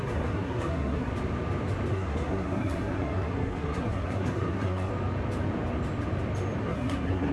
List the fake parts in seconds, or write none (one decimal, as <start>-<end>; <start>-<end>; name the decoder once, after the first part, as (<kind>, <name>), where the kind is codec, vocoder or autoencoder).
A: 0.0-1.1 (codec, SNAC); 1.9-4.9; 6.6-7.3